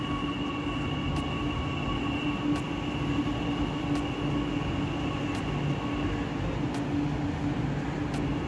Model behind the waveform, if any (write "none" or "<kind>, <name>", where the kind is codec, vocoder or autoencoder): none